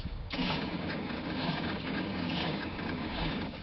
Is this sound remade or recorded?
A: remade